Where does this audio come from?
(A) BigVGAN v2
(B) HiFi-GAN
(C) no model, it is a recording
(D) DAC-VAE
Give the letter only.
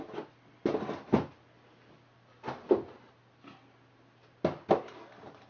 C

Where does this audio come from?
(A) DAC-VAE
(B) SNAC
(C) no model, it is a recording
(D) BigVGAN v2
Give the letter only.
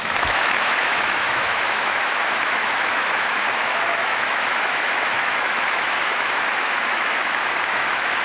A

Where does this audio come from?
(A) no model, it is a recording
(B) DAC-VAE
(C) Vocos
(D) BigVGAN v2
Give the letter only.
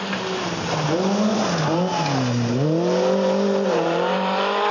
A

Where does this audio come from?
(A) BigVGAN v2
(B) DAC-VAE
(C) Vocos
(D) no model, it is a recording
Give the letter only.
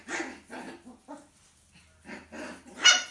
D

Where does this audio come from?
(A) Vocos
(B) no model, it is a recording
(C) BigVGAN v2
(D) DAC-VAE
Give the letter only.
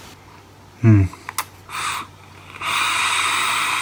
B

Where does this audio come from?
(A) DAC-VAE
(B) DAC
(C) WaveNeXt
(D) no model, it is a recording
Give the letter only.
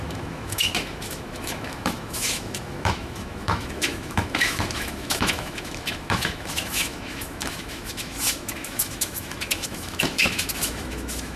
A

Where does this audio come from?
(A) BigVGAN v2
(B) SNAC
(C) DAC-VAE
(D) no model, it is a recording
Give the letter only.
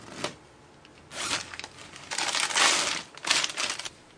D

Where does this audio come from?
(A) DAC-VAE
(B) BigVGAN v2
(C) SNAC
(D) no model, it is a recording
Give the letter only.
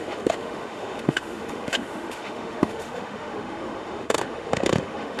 A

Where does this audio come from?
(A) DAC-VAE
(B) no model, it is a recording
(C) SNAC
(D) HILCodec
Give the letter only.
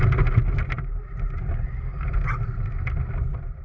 B